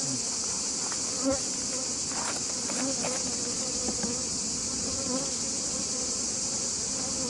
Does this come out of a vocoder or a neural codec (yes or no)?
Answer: no